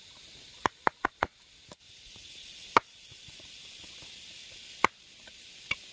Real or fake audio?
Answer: real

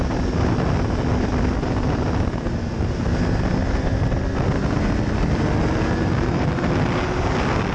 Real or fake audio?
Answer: real